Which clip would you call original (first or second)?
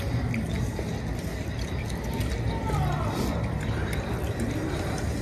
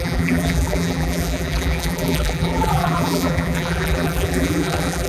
first